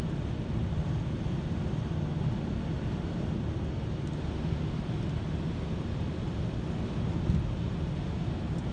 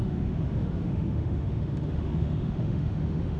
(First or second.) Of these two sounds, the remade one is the second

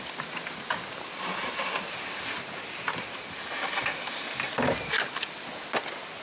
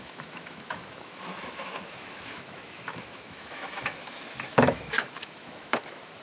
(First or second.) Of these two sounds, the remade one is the second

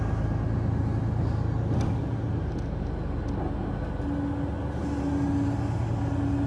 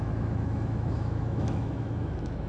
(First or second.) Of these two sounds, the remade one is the second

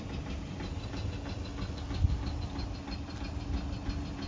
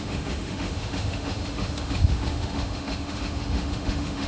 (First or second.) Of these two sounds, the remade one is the second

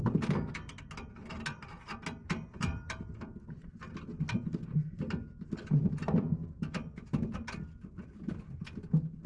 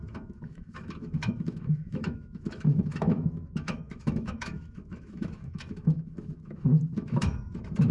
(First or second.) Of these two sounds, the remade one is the second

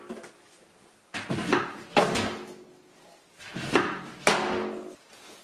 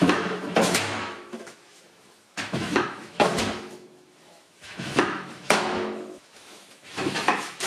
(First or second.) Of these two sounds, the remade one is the second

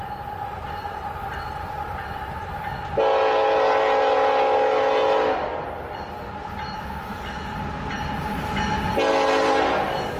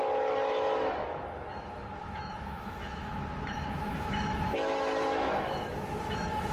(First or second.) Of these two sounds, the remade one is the second